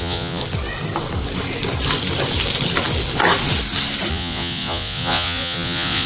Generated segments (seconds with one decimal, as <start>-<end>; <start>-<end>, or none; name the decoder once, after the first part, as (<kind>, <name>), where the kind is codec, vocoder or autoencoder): 0.0-0.4 (vocoder, Vocos); 4.1-6.1